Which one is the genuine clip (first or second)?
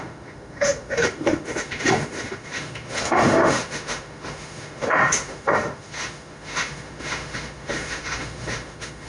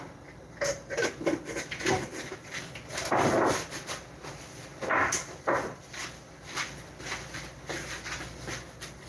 second